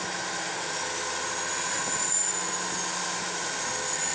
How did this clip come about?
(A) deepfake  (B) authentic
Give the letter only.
B